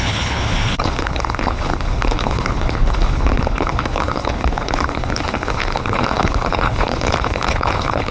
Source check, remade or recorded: remade